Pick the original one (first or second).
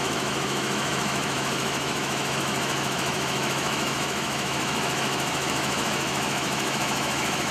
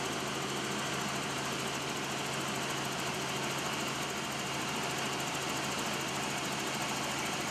second